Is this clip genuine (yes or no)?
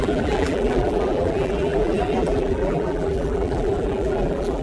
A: no